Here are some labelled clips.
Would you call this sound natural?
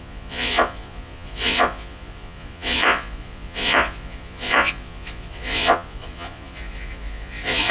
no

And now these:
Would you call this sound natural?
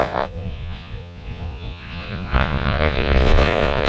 no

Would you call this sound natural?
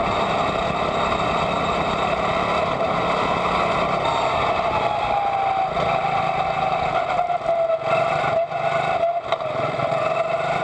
yes